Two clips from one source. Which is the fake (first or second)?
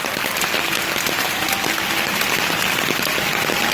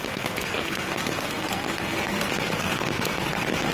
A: second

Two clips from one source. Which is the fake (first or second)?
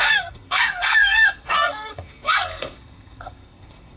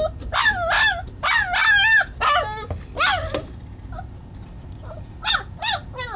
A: first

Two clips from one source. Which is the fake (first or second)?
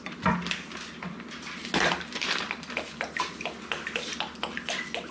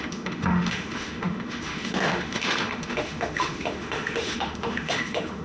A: second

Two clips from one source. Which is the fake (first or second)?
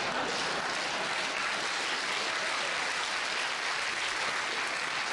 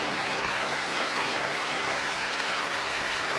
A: second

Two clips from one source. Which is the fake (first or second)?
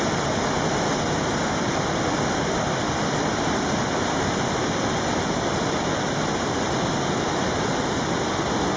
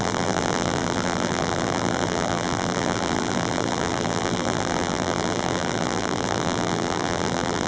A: second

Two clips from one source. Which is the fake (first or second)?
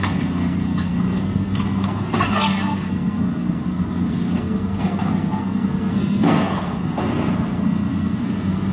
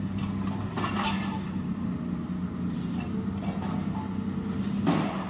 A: first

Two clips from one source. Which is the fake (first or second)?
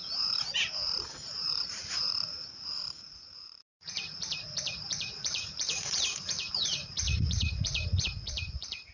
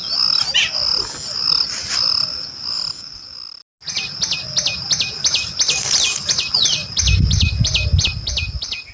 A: first